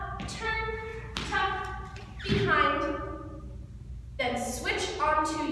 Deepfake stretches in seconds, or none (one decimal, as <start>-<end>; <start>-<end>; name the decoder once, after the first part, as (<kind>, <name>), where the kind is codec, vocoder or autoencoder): none